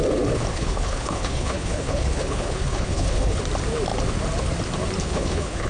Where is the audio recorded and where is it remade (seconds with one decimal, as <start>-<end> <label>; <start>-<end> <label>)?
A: 0.0-0.5 recorded; 0.5-3.4 remade; 3.4-5.0 recorded; 5.0-5.7 remade